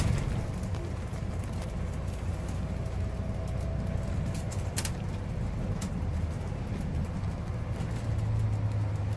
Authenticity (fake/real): real